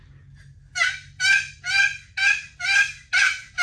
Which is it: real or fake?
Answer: real